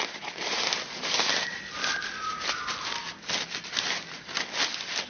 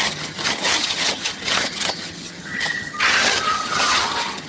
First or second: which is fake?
second